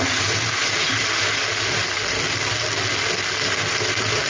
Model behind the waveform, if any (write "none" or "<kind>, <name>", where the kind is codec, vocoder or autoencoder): none